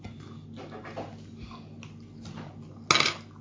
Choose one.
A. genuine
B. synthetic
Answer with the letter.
A